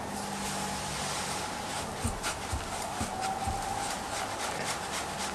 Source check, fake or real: real